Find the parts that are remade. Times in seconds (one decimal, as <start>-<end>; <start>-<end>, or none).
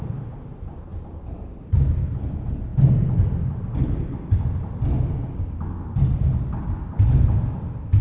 none